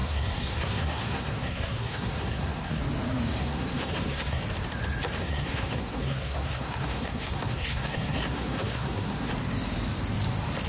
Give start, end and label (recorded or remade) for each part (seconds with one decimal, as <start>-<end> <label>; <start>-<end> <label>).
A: 0.0-2.8 remade; 2.8-3.4 recorded; 3.4-4.4 remade; 4.4-5.2 recorded; 5.2-9.3 remade; 9.3-10.7 recorded